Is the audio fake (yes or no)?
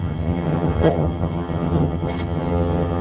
yes